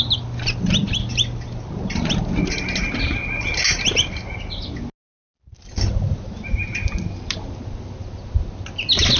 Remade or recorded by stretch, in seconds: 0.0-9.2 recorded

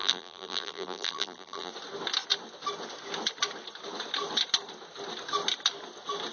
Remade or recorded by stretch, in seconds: 0.0-1.7 remade; 1.7-6.3 recorded